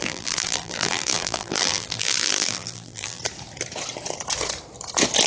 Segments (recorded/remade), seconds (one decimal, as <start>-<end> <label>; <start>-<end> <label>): 0.0-3.2 remade; 3.2-5.3 recorded